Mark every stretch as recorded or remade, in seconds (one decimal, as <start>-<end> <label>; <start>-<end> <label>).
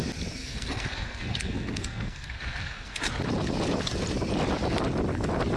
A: 0.0-0.4 recorded; 0.4-3.0 remade; 3.0-5.6 recorded